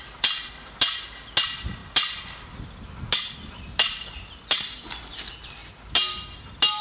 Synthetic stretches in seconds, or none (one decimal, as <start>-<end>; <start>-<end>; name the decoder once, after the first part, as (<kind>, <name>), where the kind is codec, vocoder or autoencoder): none